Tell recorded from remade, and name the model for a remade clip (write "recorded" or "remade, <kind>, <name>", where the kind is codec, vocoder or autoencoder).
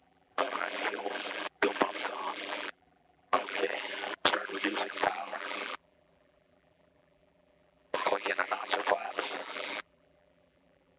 remade, vocoder, BigVGAN v2